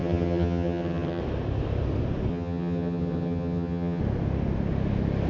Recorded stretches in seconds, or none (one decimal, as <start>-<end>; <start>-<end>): 1.2-2.3; 4.0-5.3